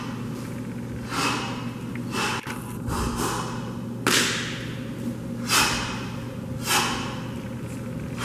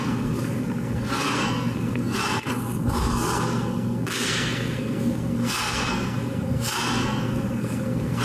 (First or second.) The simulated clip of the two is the second